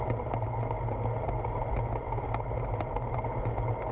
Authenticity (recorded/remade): recorded